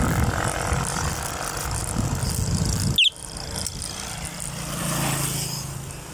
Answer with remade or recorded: recorded